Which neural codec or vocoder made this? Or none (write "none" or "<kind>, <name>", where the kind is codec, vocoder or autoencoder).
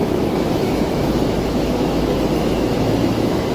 autoencoder, DAC-VAE